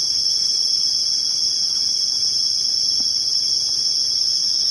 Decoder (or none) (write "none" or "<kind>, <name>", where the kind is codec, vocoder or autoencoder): vocoder, BigVGAN v2